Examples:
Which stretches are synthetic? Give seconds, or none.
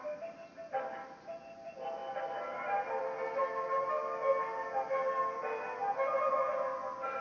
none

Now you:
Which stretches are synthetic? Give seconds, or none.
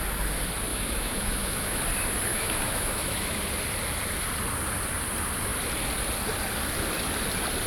0.7-1.8; 2.3-3.4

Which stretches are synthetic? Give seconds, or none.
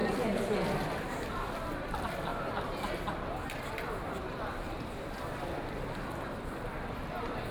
0.9-2.3; 3.9-7.5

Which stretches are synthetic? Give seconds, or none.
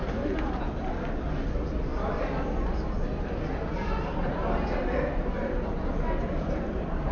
none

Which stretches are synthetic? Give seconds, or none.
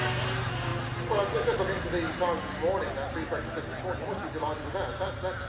none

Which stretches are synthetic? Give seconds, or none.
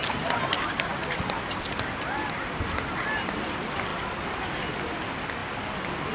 0.0-0.9; 2.6-5.4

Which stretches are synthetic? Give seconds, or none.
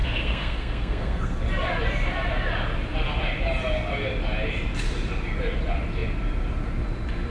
0.0-1.4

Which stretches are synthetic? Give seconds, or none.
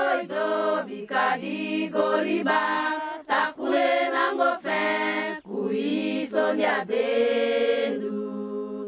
none